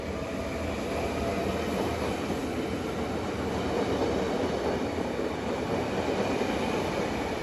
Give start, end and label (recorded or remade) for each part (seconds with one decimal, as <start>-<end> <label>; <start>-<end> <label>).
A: 0.0-7.4 recorded